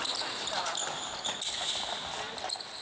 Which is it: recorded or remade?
remade